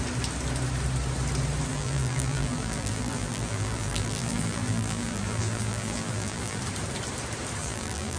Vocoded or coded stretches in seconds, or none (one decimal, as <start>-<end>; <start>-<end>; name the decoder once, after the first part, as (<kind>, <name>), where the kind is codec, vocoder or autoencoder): 1.7-6.6 (vocoder, BigVGAN v2); 7.6-8.2